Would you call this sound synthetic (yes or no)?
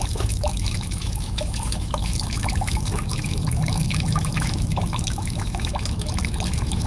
yes